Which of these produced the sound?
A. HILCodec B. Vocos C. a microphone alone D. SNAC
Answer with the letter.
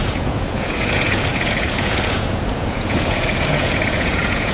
B